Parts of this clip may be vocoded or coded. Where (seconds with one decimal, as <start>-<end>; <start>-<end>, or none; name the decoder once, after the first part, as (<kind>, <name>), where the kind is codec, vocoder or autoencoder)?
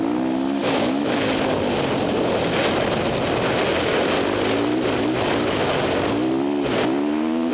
0.6-1.2 (autoencoder, DAC-VAE)